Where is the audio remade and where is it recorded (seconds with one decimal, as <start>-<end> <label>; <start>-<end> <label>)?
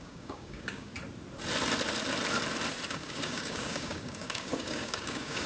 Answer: 0.0-0.9 remade; 0.9-2.9 recorded; 2.9-5.5 remade